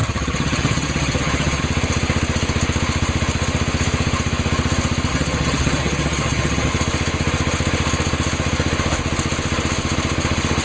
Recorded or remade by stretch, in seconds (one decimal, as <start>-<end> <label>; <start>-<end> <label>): 0.0-1.6 remade; 1.6-5.1 recorded; 5.1-6.7 remade; 6.7-10.6 recorded